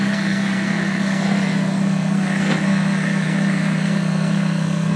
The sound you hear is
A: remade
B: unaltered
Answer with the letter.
A